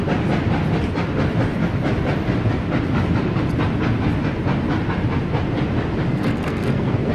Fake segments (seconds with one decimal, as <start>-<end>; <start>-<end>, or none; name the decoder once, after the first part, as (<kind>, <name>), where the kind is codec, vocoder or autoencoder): 6.1-7.1 (codec, SNAC)